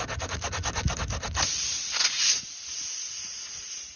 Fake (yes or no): no